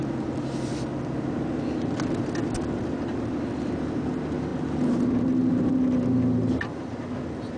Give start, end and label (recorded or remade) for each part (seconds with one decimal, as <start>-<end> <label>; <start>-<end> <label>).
0.0-7.6 recorded